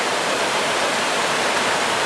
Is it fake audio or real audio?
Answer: fake